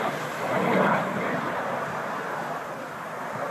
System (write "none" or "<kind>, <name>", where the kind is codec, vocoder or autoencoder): none